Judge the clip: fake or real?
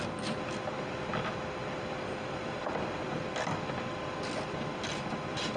real